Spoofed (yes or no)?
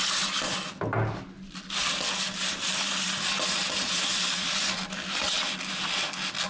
no